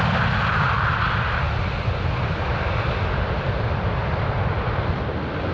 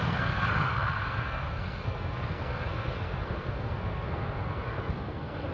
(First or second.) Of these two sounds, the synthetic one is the second